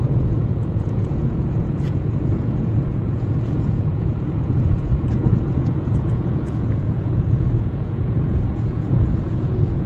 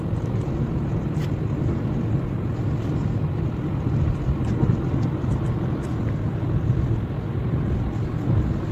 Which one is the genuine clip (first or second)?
second